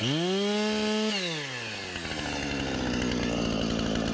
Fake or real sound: real